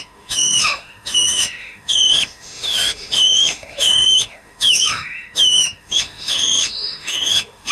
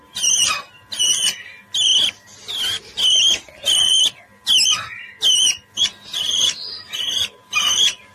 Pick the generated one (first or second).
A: first